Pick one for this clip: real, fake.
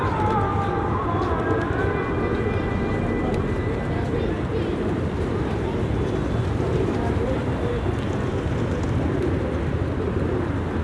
real